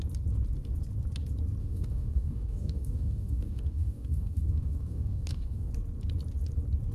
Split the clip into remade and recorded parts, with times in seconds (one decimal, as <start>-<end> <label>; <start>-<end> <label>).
0.0-1.6 recorded; 1.6-5.7 remade; 5.7-6.9 recorded